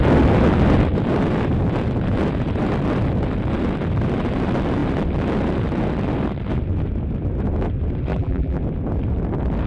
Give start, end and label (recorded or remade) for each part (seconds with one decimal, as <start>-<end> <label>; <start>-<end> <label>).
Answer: 0.0-8.1 recorded; 8.1-8.6 remade; 8.6-9.7 recorded